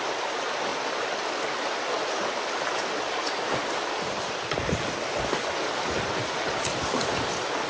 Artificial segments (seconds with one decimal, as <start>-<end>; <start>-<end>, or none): none